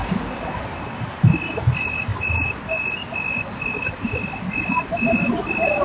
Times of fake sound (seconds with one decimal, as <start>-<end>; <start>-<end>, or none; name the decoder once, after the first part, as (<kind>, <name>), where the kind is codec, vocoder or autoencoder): none